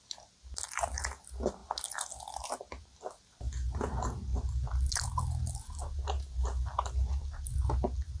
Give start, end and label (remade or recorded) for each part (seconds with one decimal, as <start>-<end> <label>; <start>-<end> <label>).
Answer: 0.0-8.2 recorded